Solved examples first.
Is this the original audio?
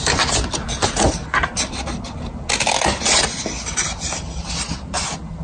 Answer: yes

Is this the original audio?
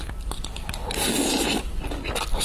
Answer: yes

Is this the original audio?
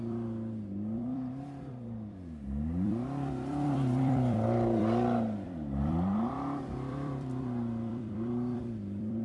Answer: no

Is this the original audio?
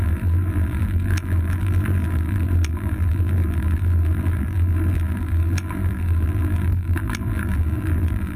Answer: no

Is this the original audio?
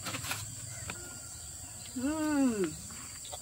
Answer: yes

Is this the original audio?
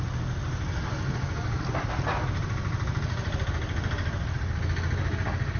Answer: yes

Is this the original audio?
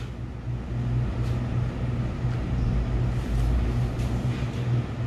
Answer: yes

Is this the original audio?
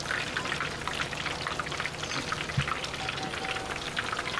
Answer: yes